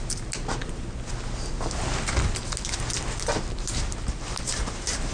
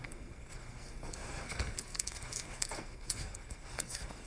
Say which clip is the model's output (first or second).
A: second